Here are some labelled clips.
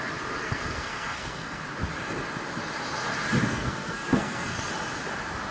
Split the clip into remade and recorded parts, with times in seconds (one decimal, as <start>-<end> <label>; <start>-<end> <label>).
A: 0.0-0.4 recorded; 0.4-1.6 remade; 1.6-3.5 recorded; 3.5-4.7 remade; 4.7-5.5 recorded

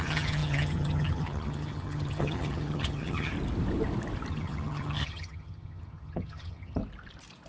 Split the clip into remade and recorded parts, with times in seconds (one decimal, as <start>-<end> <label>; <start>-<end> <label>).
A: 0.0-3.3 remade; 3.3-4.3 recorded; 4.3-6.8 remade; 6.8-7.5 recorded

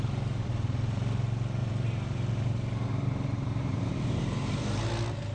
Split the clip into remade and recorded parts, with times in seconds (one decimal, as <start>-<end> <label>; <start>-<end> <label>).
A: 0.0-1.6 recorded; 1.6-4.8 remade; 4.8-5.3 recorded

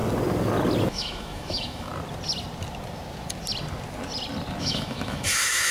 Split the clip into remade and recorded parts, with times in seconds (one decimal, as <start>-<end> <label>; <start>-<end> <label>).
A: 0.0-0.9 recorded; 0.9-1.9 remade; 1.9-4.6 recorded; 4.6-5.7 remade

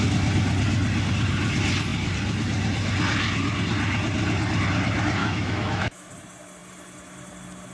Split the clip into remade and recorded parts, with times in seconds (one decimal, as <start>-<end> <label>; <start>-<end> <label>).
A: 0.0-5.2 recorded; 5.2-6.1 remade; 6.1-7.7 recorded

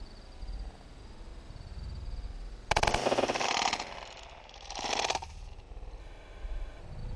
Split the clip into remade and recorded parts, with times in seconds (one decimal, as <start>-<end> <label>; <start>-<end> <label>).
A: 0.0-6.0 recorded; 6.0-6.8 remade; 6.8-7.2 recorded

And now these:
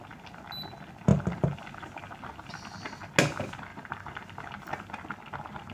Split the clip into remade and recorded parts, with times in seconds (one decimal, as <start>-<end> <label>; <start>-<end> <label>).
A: 0.0-3.7 recorded; 3.7-4.2 remade; 4.2-5.7 recorded